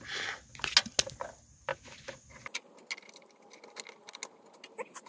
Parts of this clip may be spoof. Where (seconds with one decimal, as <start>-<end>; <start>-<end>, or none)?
none